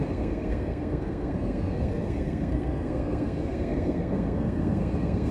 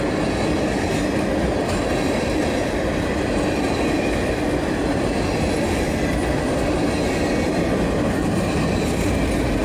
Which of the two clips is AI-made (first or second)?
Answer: first